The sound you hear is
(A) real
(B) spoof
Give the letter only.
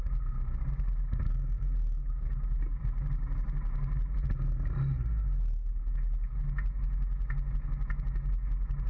A